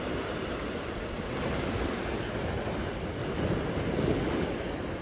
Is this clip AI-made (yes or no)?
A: no